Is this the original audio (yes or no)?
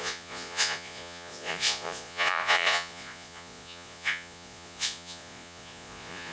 no